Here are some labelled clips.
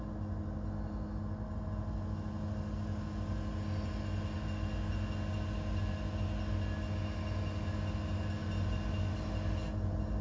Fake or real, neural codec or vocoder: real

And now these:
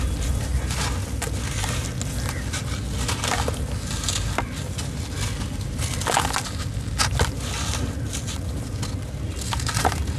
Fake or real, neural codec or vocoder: real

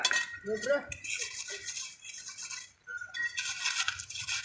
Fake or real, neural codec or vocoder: real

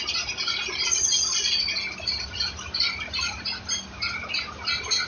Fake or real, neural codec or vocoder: real